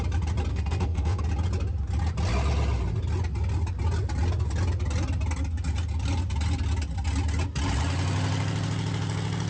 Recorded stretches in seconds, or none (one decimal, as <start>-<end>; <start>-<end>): 0.0-0.5; 1.2-9.5

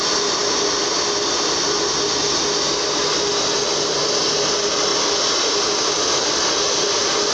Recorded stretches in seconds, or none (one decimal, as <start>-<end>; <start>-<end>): 0.0-7.3

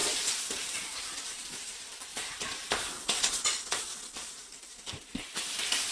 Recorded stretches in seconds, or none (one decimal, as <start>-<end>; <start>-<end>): 1.7-2.1; 4.3-5.9

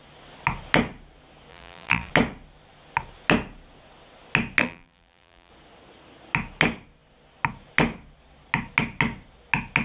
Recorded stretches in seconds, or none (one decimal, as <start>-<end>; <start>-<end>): 0.0-1.5; 2.1-4.6; 5.5-9.8

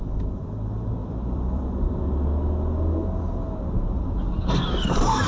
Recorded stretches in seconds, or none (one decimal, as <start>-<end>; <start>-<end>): 0.0-1.0; 2.0-5.3

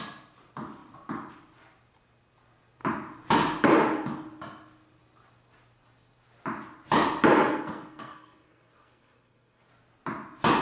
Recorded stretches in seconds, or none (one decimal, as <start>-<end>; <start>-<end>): 0.0-7.5; 9.7-10.6